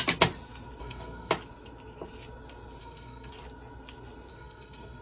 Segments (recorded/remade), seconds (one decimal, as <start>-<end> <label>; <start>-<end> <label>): 0.0-0.8 recorded; 0.8-1.3 remade; 1.3-2.8 recorded; 2.8-3.3 remade; 3.3-4.3 recorded; 4.3-5.0 remade